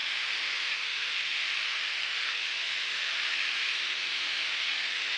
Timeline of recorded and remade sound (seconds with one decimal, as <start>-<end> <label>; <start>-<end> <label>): 0.0-5.2 remade